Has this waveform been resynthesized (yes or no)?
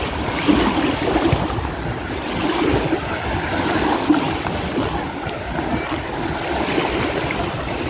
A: no